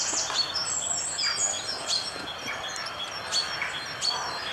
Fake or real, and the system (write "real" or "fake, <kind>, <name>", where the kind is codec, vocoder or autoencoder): real